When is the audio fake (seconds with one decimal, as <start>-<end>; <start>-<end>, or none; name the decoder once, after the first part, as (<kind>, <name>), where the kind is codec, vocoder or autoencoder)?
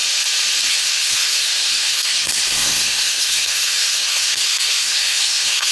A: 0.7-5.7 (codec, SNAC)